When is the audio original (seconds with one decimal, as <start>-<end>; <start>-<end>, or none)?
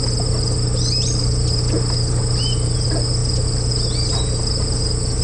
0.0-5.2